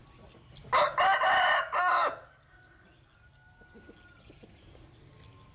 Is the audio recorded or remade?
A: recorded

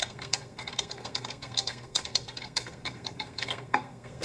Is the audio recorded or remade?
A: remade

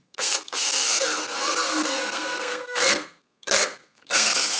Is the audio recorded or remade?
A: remade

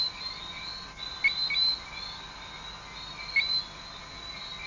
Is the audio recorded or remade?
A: recorded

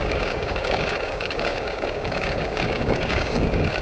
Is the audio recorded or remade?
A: remade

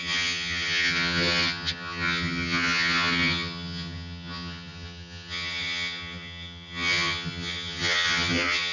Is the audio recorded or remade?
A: remade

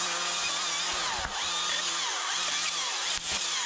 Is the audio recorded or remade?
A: recorded